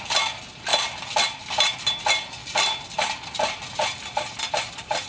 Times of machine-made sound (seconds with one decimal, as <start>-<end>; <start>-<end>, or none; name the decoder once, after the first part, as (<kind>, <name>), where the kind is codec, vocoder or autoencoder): 2.4-5.1 (vocoder, BigVGAN v2)